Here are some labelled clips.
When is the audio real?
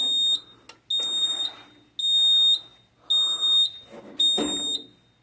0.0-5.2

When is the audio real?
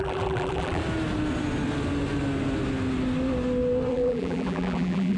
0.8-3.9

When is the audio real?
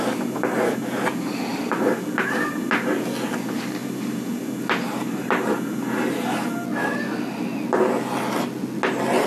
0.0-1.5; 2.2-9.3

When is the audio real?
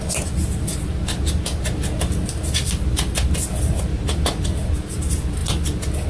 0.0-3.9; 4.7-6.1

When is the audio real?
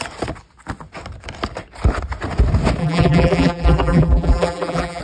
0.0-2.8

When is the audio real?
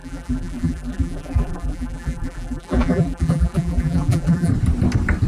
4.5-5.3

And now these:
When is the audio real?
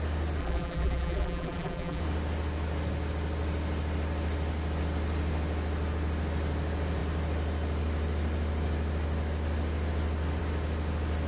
0.0-0.4; 2.0-11.3